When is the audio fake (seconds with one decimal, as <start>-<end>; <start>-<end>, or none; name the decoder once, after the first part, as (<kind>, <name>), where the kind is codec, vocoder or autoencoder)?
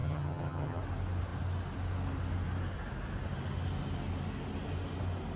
0.0-0.8 (vocoder, HiFi-GAN)